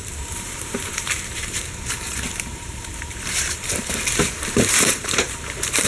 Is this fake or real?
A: fake